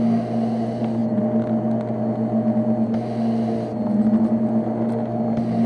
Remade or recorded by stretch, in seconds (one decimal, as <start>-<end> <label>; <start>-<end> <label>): 0.0-5.7 recorded